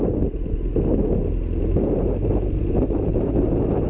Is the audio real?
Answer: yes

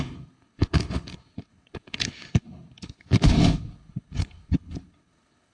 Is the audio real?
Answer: no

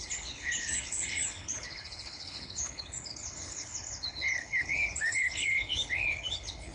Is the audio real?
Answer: no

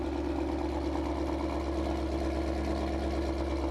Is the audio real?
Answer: yes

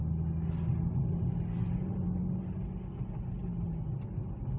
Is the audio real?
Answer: yes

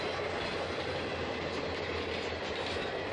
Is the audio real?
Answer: yes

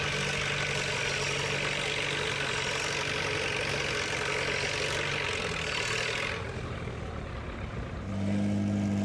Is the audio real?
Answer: yes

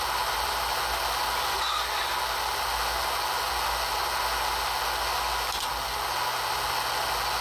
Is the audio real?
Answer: yes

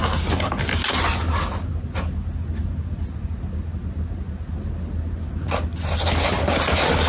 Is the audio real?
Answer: yes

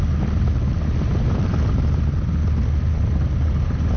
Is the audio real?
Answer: yes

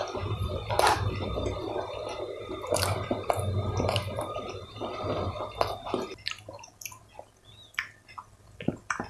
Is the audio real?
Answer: yes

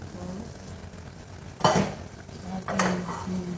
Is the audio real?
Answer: yes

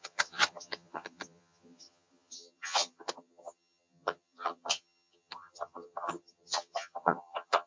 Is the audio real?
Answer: no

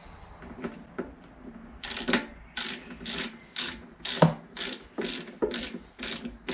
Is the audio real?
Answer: yes